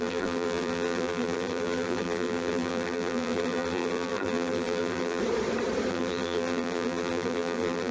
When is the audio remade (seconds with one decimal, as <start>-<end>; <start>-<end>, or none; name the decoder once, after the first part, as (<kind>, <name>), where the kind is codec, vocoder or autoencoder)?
0.0-5.2 (vocoder, BigVGAN v2); 5.9-7.9